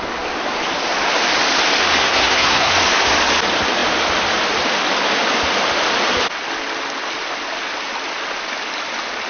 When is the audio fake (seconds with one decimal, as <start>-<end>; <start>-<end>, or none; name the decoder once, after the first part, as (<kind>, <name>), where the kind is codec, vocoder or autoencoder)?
2.0-2.7 (codec, SNAC)